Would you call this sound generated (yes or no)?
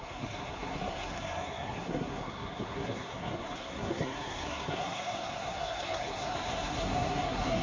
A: yes